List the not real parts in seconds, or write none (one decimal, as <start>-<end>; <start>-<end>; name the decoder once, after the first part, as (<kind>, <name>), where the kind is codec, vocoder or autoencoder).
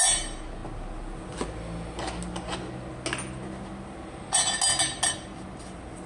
none